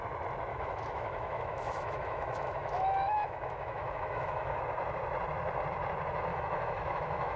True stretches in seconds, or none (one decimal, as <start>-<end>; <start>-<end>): 0.0-0.5; 4.6-6.3